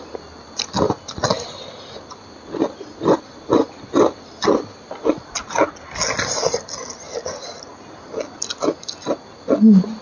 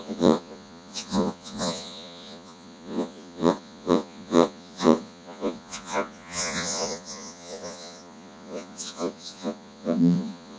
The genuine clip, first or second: first